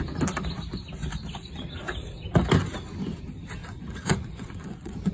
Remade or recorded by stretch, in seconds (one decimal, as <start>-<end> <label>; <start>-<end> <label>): 0.0-3.6 recorded; 3.6-5.1 remade